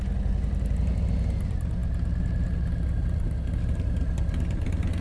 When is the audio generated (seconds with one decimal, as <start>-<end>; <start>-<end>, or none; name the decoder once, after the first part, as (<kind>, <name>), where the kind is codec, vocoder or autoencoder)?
none